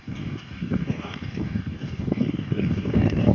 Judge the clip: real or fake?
fake